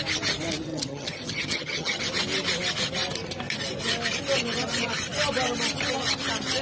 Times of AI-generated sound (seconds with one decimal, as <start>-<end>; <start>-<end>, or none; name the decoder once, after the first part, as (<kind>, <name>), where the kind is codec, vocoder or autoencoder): 0.7-2.0 (vocoder, HiFi-GAN)